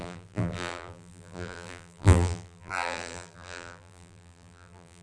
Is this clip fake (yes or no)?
yes